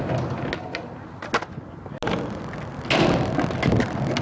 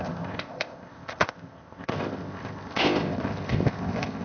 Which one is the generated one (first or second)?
second